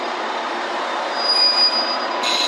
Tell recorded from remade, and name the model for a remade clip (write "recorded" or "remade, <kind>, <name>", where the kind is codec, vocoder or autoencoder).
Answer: remade, vocoder, BigVGAN v2